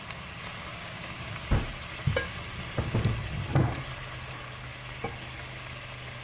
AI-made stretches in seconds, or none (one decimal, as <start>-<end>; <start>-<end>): 0.7-1.4